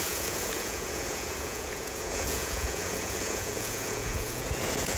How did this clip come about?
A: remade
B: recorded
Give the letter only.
A